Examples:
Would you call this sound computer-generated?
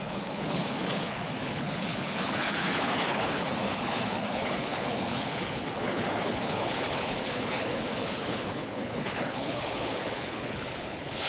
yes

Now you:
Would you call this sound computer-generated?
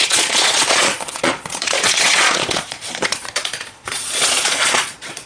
yes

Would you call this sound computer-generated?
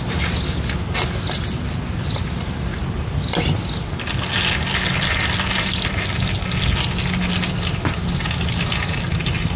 no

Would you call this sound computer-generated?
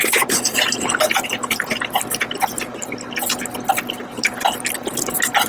no